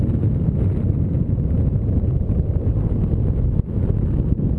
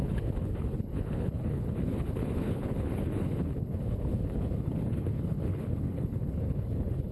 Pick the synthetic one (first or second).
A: second